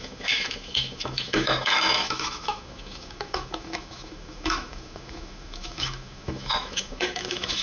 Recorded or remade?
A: remade